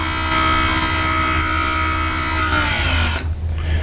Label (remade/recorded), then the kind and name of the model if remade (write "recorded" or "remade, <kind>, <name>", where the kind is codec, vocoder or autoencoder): recorded